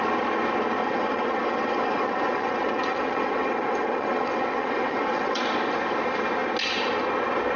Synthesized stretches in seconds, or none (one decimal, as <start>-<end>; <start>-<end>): 0.8-5.4